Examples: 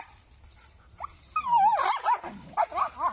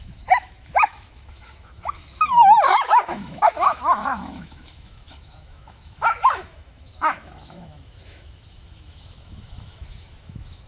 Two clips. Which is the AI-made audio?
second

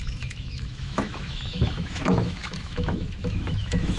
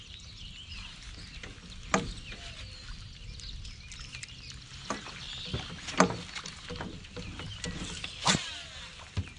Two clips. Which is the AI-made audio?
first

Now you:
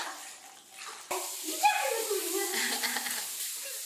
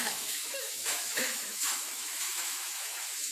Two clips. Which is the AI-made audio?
second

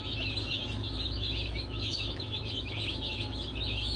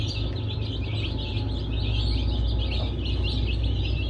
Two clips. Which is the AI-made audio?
first